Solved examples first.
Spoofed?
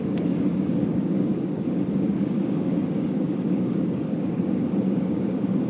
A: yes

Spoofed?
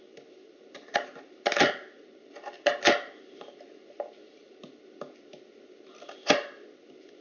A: no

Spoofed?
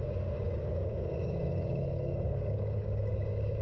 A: yes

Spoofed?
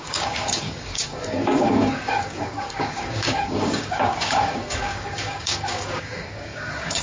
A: yes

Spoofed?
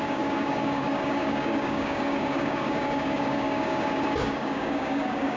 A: yes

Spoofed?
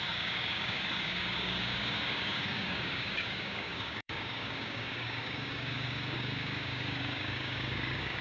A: yes